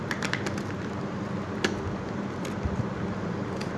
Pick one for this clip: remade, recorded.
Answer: recorded